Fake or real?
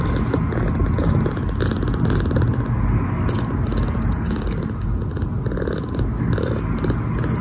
real